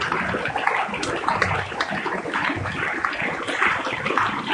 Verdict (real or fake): real